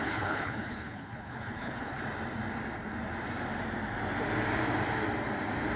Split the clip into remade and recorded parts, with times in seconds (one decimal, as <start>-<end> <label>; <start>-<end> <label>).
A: 0.0-2.0 remade; 2.0-5.8 recorded

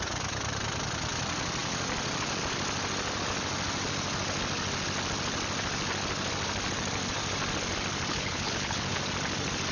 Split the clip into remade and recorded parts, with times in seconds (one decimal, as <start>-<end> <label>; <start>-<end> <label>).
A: 0.0-8.1 recorded; 8.1-9.0 remade; 9.0-9.7 recorded

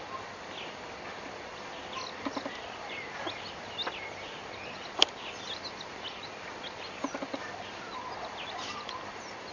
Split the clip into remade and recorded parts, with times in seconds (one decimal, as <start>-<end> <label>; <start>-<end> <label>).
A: 0.0-9.5 recorded